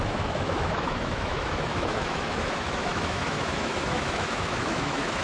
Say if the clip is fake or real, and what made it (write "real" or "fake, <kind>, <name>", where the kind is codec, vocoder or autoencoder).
fake, autoencoder, DAC-VAE